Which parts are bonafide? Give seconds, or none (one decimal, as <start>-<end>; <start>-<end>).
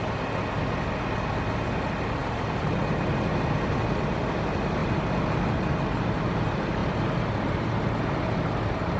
0.0-9.0